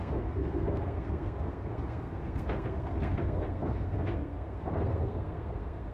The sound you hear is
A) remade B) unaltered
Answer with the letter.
A